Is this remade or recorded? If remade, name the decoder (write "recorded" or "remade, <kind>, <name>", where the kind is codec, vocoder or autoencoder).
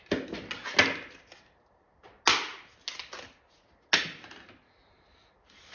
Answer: recorded